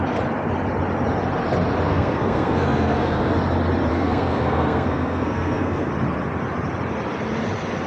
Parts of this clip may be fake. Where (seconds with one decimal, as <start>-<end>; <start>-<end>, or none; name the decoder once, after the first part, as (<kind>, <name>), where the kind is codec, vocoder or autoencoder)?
1.9-3.3 (codec, SNAC); 3.9-5.9